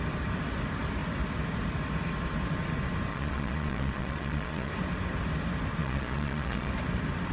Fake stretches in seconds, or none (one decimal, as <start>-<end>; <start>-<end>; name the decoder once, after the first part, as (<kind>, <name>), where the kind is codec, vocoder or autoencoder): 3.1-4.7 (vocoder, Vocos); 5.8-6.7